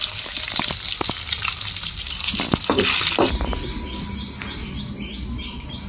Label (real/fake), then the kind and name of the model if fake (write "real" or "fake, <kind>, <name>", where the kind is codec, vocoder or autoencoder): real